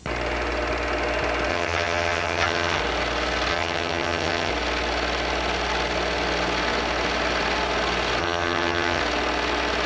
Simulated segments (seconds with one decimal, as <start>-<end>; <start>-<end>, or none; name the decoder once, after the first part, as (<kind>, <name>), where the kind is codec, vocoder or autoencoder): 1.5-2.8 (vocoder, HiFi-GAN); 3.5-4.5; 8.2-9.0